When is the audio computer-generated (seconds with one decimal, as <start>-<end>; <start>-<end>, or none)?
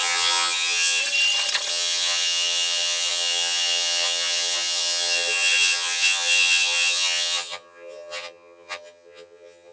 0.0-1.0; 1.7-9.7